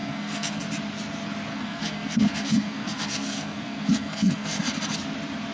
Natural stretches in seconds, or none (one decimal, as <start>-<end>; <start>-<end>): 0.6-1.5; 4.6-5.5